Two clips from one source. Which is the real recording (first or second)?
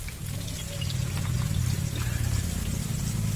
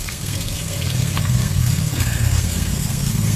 first